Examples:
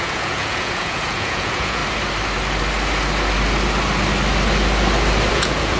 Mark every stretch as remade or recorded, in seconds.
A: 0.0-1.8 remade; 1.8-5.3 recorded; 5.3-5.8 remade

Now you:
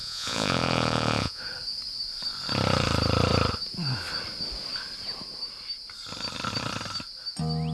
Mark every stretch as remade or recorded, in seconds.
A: 0.0-1.4 remade; 1.4-7.7 recorded

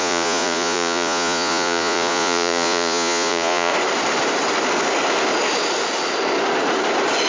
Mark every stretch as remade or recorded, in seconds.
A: 0.0-3.7 remade; 3.7-7.3 recorded